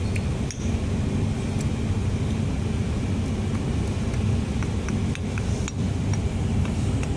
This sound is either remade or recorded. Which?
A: recorded